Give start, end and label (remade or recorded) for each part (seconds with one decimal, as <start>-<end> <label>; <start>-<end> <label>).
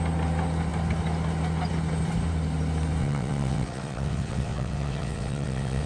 0.0-3.0 recorded; 3.0-5.9 remade